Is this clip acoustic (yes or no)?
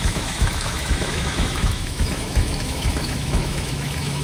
no